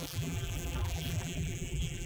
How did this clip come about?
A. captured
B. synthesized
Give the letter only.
B